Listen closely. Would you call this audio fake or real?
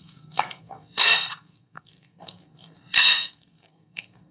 fake